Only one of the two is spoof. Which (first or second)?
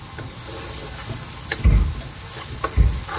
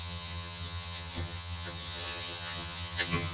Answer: second